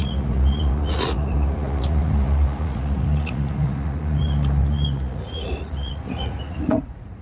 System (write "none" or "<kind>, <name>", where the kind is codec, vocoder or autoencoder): vocoder, Vocos